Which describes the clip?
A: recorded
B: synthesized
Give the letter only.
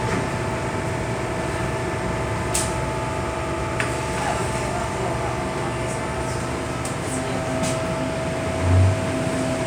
A